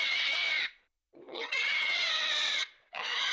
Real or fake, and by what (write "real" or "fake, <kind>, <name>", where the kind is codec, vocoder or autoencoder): fake, vocoder, WaveNeXt